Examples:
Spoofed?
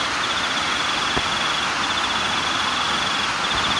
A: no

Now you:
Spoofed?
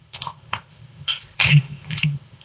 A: yes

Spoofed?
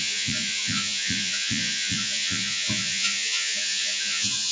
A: yes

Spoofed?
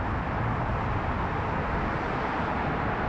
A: no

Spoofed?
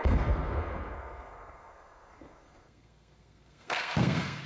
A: yes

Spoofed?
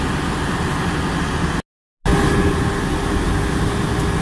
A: no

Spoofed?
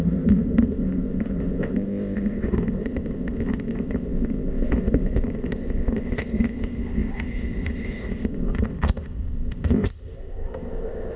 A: yes